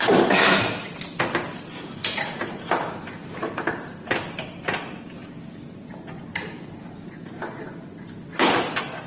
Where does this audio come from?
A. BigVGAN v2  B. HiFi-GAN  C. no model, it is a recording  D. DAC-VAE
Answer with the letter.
A